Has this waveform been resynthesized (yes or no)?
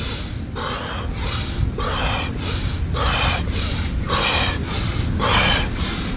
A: no